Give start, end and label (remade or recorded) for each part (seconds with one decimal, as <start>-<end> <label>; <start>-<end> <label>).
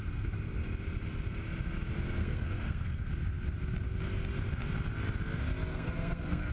0.0-2.2 recorded; 2.2-3.1 remade; 3.1-5.7 recorded; 5.7-6.5 remade